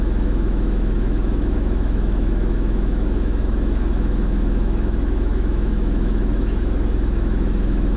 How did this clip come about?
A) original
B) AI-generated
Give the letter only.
B